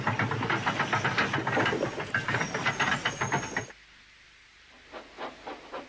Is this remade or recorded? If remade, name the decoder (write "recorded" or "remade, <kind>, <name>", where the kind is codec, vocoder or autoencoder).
recorded